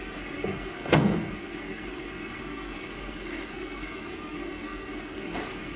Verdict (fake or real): fake